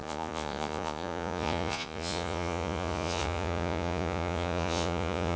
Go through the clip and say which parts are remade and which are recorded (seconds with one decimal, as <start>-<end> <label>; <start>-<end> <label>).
0.0-5.4 remade